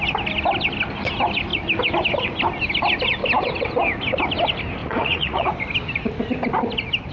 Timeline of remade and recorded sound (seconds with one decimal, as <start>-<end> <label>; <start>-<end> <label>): 0.0-4.8 recorded; 4.8-5.5 remade; 5.5-7.1 recorded